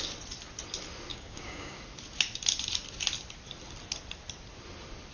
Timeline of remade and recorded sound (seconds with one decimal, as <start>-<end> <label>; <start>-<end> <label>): 0.0-1.1 recorded; 1.1-1.8 remade; 1.8-5.1 recorded